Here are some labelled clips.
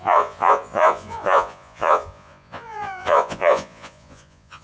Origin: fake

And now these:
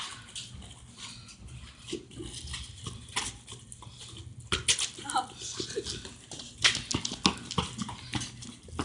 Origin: real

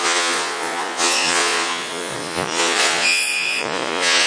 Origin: fake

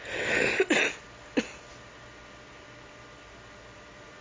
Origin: real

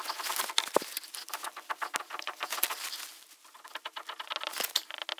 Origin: real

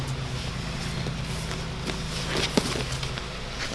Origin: real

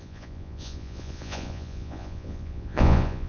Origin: fake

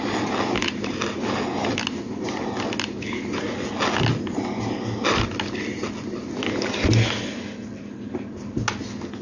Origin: real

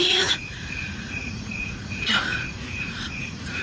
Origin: fake